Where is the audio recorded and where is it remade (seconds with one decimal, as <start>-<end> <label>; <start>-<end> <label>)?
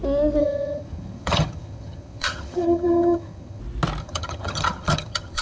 0.0-0.4 recorded; 0.4-3.6 remade; 3.6-4.0 recorded; 4.0-5.4 remade